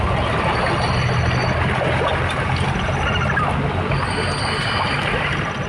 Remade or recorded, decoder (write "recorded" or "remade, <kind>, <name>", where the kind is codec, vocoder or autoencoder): recorded